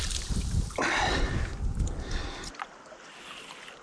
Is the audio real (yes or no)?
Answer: yes